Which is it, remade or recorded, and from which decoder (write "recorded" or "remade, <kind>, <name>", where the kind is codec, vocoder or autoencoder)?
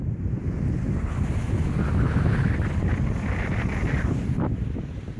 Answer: recorded